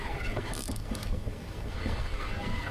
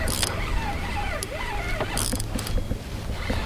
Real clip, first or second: second